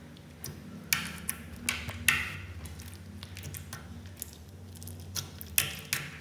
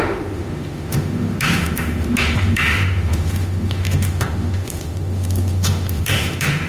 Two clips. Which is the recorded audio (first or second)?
first